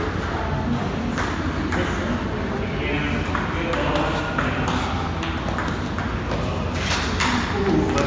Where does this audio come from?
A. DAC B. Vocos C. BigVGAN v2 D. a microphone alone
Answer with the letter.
D